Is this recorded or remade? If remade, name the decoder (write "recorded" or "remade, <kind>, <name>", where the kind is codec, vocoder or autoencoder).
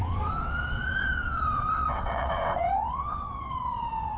remade, vocoder, WaveNeXt